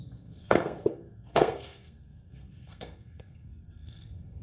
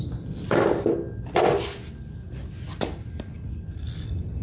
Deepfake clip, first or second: first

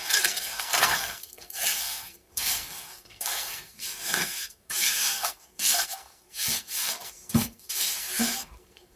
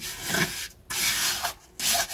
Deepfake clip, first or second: first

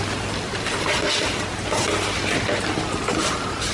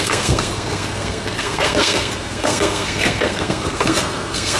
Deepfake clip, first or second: second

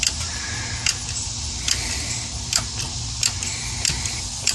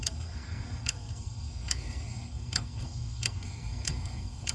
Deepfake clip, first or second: second